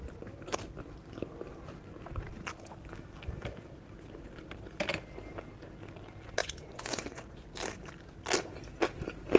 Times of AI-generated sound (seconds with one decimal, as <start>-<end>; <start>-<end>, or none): 6.4-7.5